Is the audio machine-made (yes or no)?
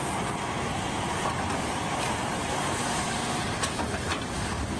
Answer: no